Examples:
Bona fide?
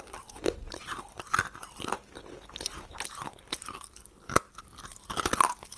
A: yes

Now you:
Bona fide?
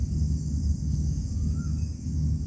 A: no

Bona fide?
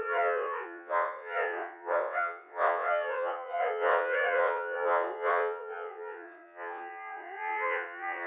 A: no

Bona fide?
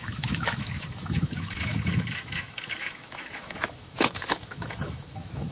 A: no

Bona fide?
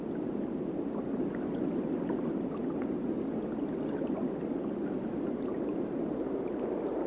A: yes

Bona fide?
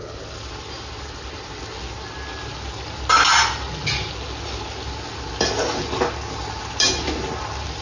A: yes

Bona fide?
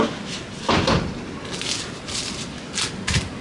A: yes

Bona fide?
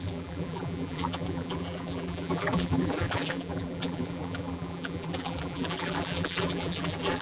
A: no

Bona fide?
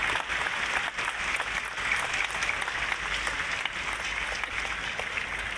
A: yes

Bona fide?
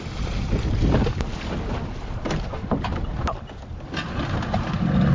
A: yes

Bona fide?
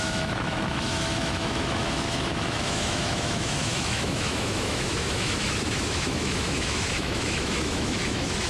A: no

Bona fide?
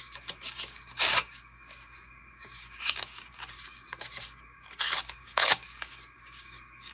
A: no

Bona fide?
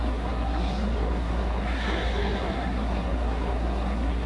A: no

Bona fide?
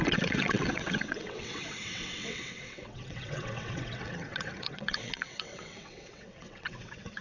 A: no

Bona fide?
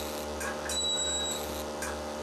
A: yes